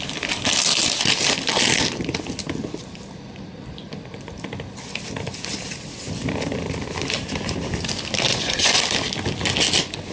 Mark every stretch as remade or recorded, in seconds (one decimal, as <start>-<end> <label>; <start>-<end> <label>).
0.0-8.3 recorded; 8.3-8.8 remade; 8.8-10.1 recorded